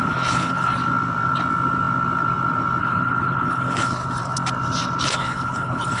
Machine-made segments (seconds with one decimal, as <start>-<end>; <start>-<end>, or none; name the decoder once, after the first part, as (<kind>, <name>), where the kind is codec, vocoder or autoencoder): 0.0-0.7 (codec, HILCodec); 2.8-4.0; 5.0-6.0